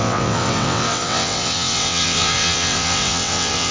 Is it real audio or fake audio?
fake